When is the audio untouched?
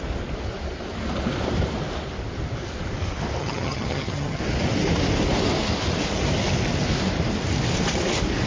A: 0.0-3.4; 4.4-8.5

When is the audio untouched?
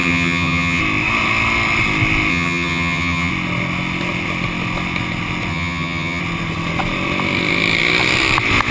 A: 0.8-2.3; 3.3-5.5; 6.2-8.7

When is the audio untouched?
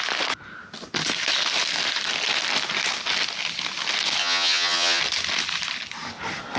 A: 0.0-4.2; 5.0-6.6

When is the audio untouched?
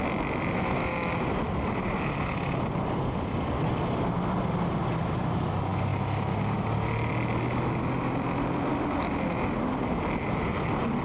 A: 0.0-11.0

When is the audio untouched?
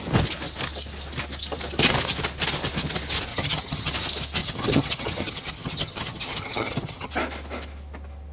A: 0.0-3.3; 3.9-4.4; 7.1-8.3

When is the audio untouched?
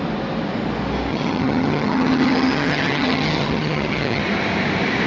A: 0.0-1.1; 4.2-5.1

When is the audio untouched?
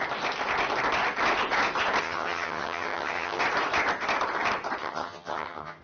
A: 0.0-2.0; 3.4-4.8